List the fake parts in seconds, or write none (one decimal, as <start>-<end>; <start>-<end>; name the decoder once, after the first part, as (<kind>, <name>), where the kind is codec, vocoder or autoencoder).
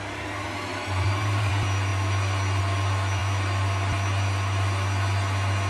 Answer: 0.7-1.5 (vocoder, BigVGAN v2)